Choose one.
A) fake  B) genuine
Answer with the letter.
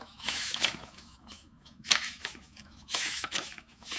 A